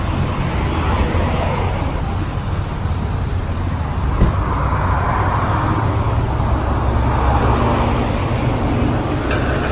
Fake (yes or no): no